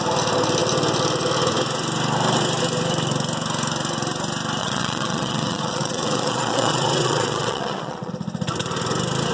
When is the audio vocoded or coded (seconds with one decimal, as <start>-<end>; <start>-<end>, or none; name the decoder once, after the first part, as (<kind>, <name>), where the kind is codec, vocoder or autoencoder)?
4.6-8.1 (vocoder, Vocos)